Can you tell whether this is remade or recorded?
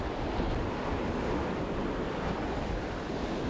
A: recorded